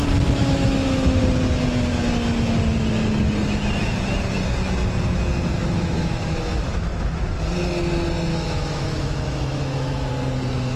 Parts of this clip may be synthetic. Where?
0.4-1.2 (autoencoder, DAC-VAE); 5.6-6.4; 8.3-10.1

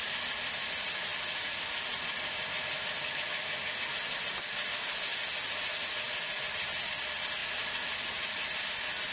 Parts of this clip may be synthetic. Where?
none